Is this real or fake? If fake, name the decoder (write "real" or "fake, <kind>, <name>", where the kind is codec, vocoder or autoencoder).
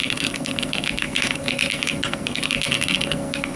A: fake, codec, SNAC